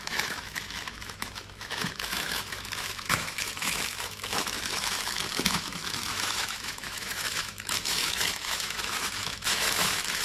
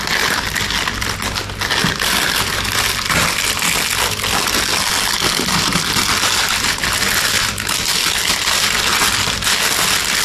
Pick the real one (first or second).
second